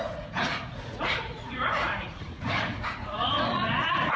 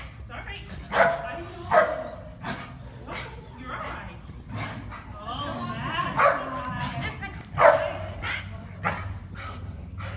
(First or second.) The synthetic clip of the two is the first